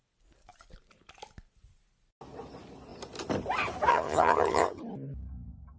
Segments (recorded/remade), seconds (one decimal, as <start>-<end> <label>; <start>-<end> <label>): 0.0-3.9 recorded; 3.9-4.8 remade; 4.8-5.8 recorded